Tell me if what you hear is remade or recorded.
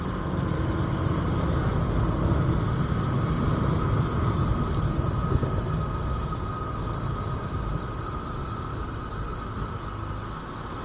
recorded